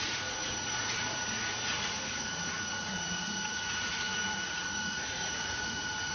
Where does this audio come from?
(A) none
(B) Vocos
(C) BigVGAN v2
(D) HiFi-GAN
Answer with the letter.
B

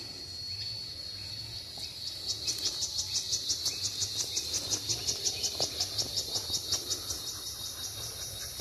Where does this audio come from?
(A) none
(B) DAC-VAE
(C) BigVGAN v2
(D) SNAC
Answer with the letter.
A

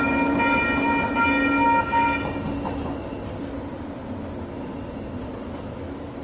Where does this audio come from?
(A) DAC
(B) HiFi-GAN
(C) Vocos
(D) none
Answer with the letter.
D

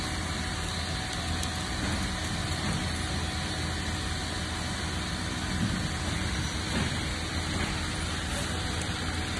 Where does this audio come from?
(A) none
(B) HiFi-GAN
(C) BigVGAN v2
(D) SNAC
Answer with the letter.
A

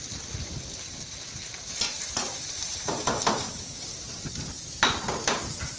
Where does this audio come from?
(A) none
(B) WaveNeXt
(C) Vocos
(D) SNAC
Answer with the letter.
A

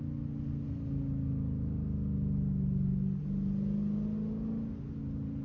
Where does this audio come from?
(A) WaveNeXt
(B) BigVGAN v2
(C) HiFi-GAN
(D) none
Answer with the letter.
D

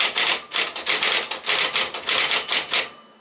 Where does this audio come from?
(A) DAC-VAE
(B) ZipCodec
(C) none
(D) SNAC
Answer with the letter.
C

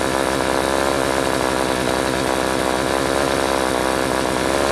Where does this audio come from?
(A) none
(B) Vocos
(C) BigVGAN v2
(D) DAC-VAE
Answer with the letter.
A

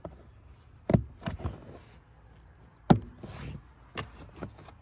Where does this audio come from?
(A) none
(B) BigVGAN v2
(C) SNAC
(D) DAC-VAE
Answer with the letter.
A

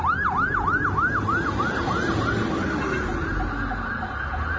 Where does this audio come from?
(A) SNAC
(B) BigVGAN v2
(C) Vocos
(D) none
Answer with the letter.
D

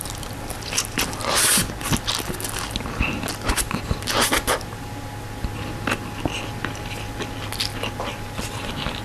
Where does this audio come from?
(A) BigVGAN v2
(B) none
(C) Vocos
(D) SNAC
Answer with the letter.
B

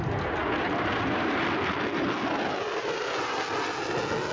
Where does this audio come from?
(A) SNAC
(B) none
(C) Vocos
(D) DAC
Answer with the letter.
B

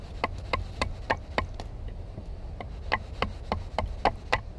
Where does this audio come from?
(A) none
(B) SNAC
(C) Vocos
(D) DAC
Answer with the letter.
A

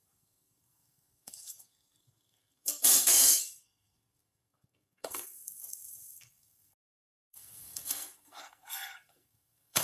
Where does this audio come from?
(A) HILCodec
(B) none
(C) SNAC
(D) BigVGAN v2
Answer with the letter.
C